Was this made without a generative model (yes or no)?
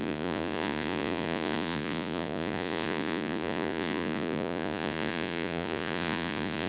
no